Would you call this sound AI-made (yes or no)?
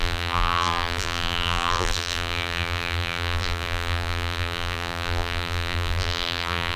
yes